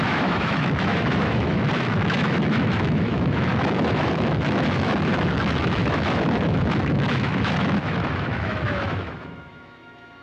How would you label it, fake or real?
fake